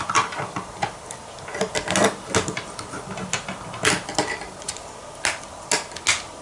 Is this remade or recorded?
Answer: recorded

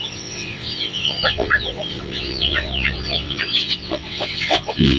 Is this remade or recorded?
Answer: remade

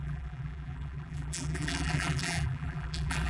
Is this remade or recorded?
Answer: remade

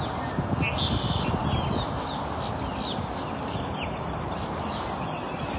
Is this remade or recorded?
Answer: recorded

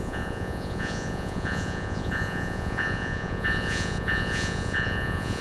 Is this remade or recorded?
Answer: remade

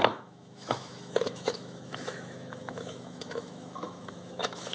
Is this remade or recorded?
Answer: remade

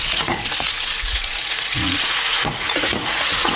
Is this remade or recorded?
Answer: remade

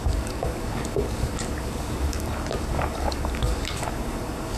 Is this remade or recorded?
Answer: remade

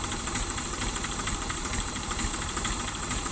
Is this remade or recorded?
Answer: remade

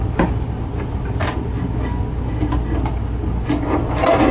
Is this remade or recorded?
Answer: recorded